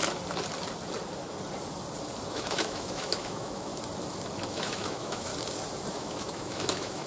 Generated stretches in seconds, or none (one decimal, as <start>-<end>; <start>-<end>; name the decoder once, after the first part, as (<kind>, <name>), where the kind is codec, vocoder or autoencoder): 2.3-3.7 (autoencoder, DAC-VAE); 4.5-5.3; 5.9-7.1